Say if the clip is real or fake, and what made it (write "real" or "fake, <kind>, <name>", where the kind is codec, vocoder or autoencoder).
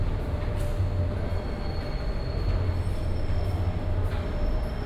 real